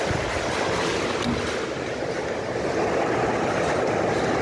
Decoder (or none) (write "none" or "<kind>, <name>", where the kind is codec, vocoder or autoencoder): none